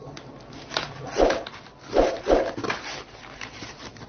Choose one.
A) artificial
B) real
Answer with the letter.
B